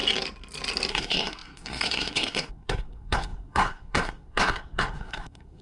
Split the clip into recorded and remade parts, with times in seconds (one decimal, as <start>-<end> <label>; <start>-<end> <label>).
0.0-0.9 recorded; 0.9-5.6 remade